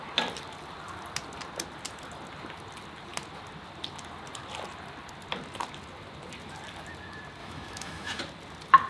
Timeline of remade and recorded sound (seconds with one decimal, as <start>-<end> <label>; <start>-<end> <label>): 0.0-7.4 recorded; 7.4-8.2 remade; 8.2-8.9 recorded